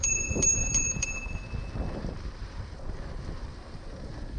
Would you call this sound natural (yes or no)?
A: no